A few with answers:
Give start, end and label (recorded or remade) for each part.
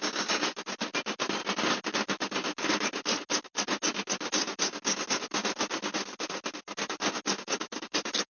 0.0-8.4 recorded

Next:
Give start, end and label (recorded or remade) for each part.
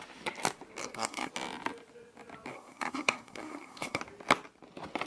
0.0-0.8 recorded; 0.8-1.3 remade; 1.3-2.5 recorded; 2.5-4.0 remade; 4.0-5.1 recorded